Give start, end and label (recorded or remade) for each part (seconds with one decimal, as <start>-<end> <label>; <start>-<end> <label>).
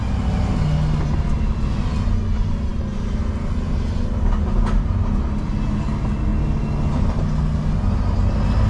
0.0-8.7 recorded